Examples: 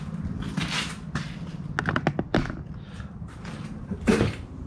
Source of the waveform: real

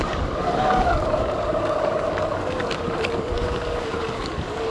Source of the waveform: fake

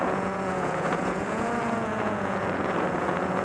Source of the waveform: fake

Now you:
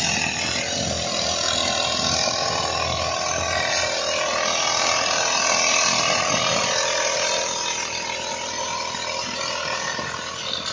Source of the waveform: real